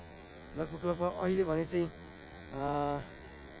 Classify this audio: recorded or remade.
remade